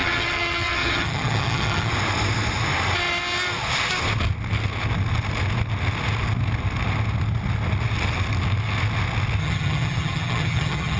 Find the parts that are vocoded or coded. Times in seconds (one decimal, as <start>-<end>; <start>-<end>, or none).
0.0-1.9; 9.4-11.0